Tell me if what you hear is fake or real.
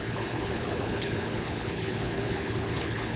fake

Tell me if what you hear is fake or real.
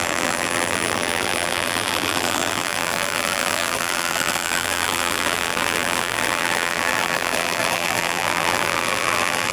fake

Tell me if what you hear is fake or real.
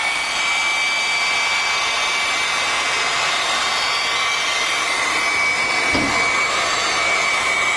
real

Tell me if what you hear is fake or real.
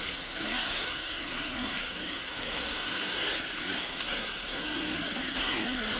fake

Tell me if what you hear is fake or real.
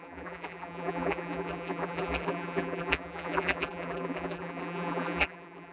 fake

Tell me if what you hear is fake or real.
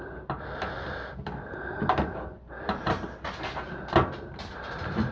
real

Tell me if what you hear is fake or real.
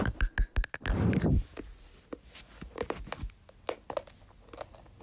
real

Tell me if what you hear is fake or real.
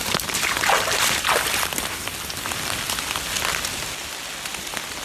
real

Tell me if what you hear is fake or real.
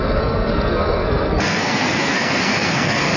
fake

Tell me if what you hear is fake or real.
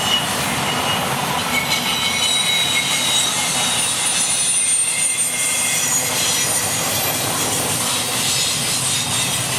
real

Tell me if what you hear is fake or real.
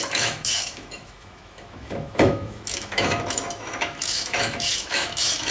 fake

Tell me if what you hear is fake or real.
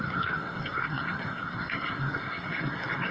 fake